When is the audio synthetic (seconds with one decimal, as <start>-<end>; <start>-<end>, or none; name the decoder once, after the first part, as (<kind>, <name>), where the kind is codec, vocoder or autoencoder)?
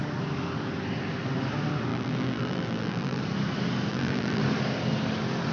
1.9-3.2 (vocoder, BigVGAN v2); 3.9-4.4